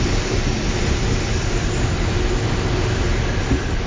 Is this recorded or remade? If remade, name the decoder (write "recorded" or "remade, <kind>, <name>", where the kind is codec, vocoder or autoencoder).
recorded